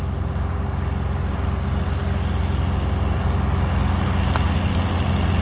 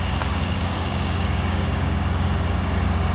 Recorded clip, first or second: first